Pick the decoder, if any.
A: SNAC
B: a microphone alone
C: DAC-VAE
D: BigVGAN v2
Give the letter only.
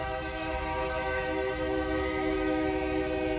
C